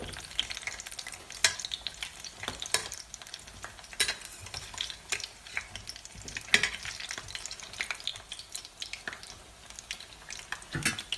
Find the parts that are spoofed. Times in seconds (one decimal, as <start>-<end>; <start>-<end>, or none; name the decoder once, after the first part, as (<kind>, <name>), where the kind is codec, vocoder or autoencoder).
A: 2.8-3.4 (vocoder, BigVGAN v2); 8.1-9.0